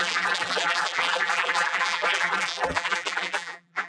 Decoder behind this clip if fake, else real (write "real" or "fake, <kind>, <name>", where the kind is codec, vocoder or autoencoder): fake, vocoder, BigVGAN v2